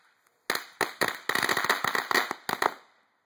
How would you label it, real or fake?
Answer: real